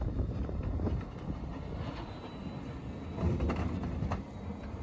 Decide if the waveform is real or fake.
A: real